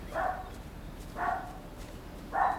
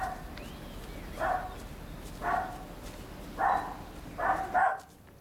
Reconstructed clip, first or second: first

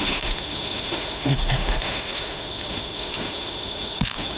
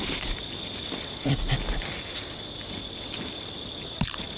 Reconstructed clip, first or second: first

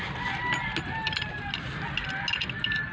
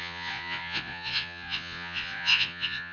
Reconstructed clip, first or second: second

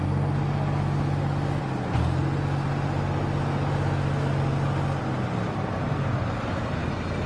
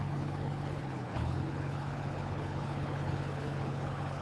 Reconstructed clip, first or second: second